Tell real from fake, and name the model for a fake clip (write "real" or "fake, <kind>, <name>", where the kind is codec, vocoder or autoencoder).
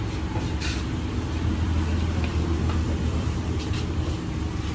real